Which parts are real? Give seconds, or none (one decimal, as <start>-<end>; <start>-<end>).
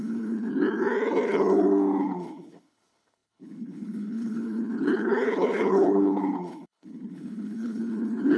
0.5-2.0